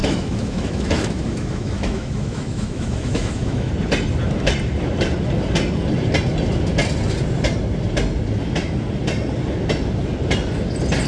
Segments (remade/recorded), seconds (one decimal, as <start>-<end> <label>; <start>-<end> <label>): 0.0-3.7 remade; 3.7-11.1 recorded